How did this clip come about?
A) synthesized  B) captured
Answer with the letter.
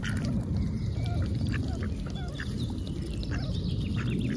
B